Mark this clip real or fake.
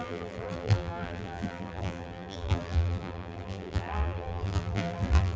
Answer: fake